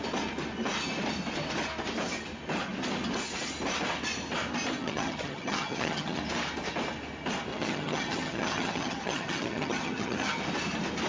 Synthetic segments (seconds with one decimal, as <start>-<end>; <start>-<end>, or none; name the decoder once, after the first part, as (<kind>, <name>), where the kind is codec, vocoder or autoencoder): 4.8-6.2 (vocoder, HiFi-GAN); 7.5-10.4

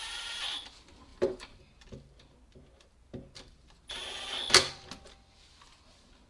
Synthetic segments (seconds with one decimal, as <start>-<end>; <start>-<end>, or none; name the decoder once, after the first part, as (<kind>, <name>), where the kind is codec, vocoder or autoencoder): 1.1-1.6 (vocoder, BigVGAN v2)

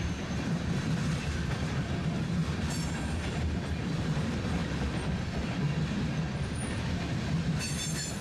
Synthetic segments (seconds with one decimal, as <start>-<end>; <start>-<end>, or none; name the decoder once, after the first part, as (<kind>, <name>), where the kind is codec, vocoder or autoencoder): 0.0-2.4 (vocoder, BigVGAN v2); 4.0-4.6; 7.4-8.2

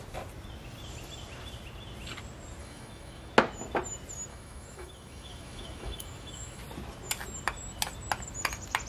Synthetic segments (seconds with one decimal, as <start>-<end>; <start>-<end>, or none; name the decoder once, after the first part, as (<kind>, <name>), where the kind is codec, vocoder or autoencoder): 2.6-3.3 (autoencoder, DAC-VAE); 4.3-6.6

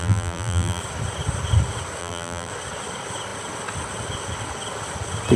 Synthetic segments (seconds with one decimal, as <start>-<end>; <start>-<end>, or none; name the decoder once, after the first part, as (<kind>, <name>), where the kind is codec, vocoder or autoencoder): 0.0-0.8 (vocoder, BigVGAN v2); 2.0-2.5

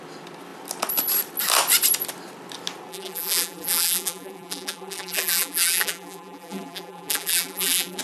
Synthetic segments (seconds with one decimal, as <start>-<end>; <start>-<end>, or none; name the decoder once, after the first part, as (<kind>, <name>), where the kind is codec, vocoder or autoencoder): 2.9-8.0 (vocoder, BigVGAN v2)